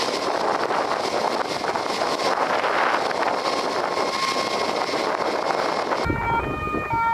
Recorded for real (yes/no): yes